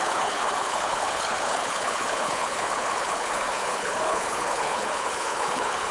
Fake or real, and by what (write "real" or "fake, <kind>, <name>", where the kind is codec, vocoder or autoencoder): fake, codec, HILCodec